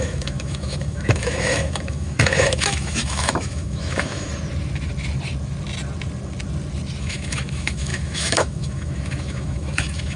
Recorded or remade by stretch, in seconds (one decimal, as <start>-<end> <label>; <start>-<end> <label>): 0.0-4.3 remade; 4.3-7.0 recorded; 7.0-10.2 remade